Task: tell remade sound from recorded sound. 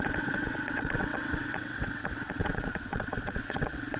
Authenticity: remade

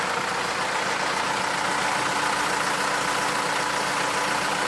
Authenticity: recorded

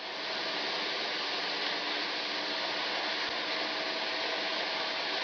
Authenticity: recorded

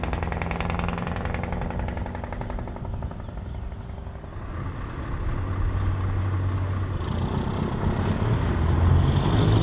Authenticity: recorded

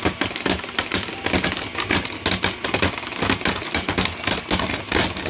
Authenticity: recorded